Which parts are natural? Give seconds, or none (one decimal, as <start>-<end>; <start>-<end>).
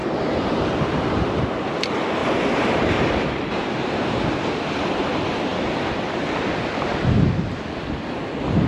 1.4-2.2; 5.0-8.7